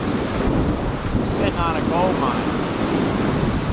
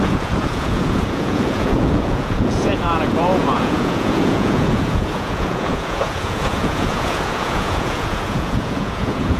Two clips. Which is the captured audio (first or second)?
first